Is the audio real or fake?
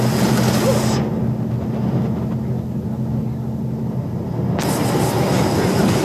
real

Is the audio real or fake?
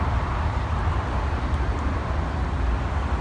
real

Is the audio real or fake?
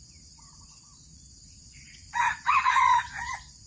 fake